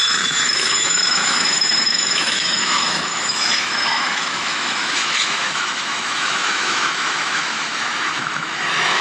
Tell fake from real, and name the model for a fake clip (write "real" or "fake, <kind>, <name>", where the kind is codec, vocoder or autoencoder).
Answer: fake, autoencoder, DAC-VAE